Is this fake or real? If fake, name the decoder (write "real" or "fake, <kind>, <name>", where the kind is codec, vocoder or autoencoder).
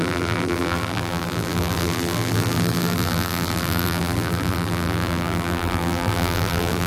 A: fake, vocoder, BigVGAN v2